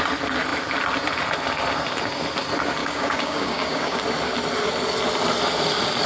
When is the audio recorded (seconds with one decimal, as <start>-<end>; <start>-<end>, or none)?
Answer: 0.0-2.8; 4.0-6.1